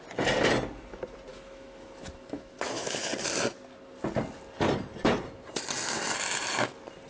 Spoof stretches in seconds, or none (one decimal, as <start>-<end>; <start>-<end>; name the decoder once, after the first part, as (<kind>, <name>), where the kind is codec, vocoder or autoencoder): 1.3-3.1 (autoencoder, DAC-VAE)